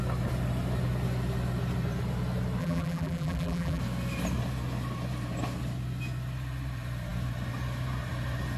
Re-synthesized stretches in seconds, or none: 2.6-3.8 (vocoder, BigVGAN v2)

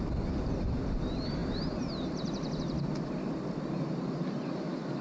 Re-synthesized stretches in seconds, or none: none

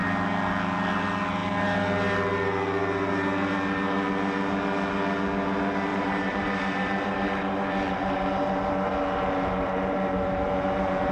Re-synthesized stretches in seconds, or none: 5.9-11.1 (vocoder, BigVGAN v2)

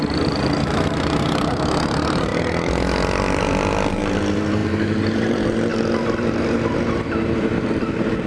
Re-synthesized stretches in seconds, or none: 0.0-2.3 (vocoder, BigVGAN v2); 3.9-8.3

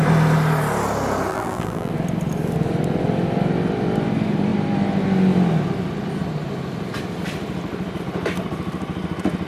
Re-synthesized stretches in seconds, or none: 1.3-1.9 (vocoder, BigVGAN v2)

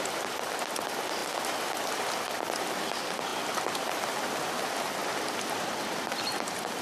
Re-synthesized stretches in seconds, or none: 0.0-6.8 (vocoder, BigVGAN v2)